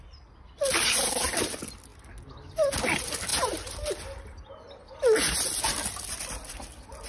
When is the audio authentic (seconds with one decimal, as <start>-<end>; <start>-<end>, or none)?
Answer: 1.9-2.8; 3.3-6.2

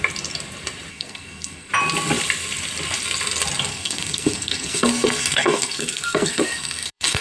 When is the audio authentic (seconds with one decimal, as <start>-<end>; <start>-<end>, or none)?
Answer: 0.0-0.9; 1.7-3.7